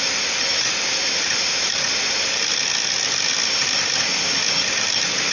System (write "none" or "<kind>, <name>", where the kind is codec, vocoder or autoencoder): none